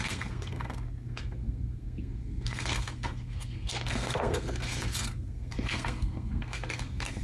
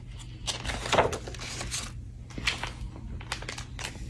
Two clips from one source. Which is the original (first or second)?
second